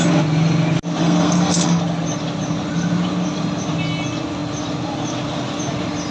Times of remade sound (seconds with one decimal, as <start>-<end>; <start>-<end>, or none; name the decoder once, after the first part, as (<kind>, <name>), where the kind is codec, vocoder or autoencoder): 1.0-1.8 (codec, SNAC)